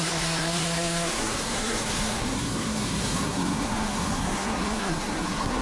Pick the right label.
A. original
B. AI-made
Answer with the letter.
B